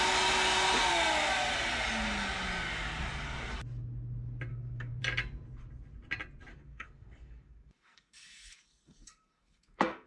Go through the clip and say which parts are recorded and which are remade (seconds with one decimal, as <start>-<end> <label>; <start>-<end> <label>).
0.0-4.5 recorded; 4.5-5.0 remade; 5.0-6.5 recorded; 6.5-10.1 remade